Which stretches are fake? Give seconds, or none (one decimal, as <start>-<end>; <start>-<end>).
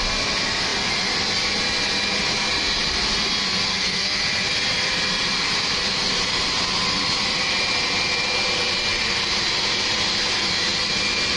3.7-4.2